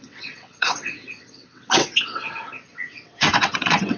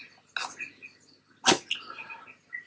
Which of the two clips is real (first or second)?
second